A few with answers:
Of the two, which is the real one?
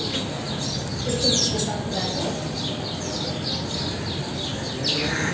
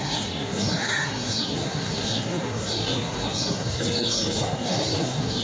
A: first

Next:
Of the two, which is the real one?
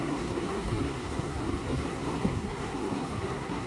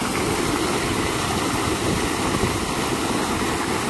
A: second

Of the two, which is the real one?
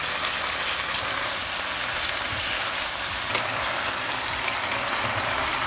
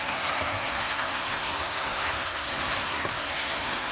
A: first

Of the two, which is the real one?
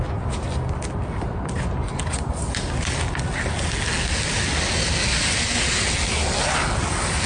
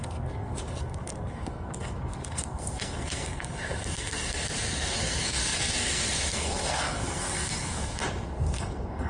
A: first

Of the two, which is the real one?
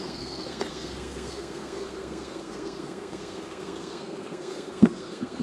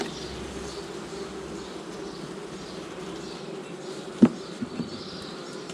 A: second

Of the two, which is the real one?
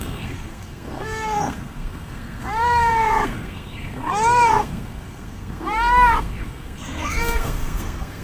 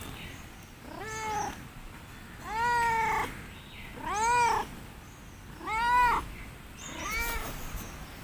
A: second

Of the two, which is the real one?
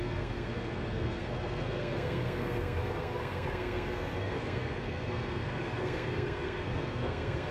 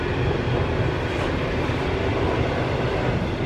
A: second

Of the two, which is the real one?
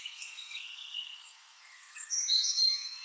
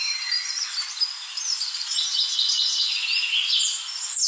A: second